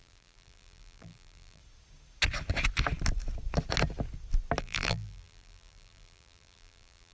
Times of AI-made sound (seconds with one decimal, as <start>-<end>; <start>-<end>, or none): 0.0-1.6; 4.6-7.1